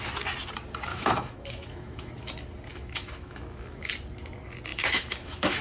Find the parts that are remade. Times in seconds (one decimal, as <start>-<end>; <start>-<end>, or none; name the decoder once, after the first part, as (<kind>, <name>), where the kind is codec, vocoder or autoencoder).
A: 0.9-2.1 (autoencoder, DAC-VAE); 2.7-3.9; 4.7-5.6